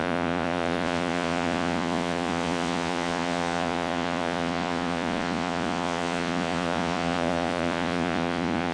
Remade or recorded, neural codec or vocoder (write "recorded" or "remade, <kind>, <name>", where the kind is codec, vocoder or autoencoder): remade, vocoder, Vocos